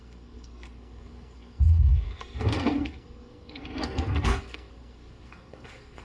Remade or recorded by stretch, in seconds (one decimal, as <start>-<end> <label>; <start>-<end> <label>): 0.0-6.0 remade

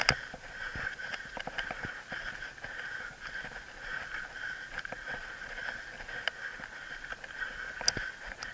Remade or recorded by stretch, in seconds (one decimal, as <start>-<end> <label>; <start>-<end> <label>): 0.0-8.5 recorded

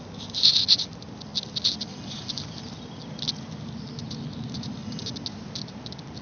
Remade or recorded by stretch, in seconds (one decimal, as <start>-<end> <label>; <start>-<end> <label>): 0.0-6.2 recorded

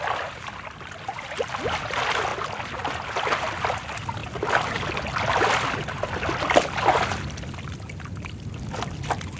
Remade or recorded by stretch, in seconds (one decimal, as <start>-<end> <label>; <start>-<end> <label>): 0.0-9.4 recorded

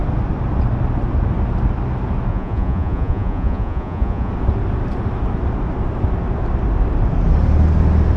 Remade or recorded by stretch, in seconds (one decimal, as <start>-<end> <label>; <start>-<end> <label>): 0.0-2.3 recorded; 2.3-4.3 remade; 4.3-8.2 recorded

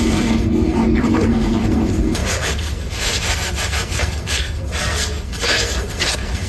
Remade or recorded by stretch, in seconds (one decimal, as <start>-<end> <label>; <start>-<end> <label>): 0.0-6.5 remade